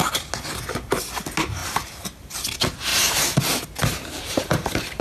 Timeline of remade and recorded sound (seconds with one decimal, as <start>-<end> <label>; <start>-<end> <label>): 0.0-1.6 recorded; 1.6-2.2 remade; 2.2-2.9 recorded; 2.9-3.4 remade; 3.4-3.8 recorded; 3.8-5.0 remade